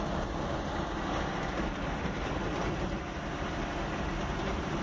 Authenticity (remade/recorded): recorded